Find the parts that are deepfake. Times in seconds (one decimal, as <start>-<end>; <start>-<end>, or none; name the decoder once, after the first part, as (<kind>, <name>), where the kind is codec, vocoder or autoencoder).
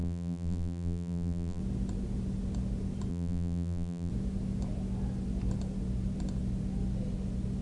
0.0-1.6 (vocoder, BigVGAN v2); 3.1-4.1